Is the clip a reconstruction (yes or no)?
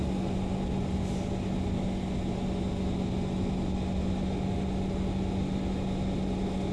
no